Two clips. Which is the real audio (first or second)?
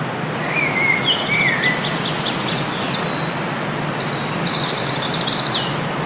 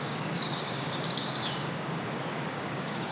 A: first